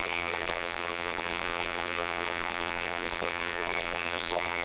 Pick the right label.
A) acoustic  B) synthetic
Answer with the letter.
B